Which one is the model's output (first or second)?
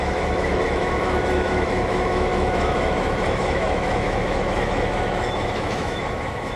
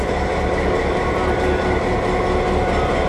first